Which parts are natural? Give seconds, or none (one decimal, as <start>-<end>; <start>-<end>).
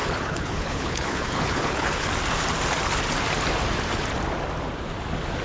2.1-5.4